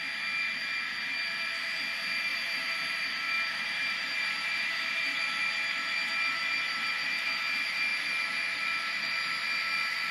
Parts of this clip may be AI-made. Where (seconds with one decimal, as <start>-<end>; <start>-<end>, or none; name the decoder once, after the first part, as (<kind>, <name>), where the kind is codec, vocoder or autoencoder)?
2.3-5.2 (vocoder, BigVGAN v2)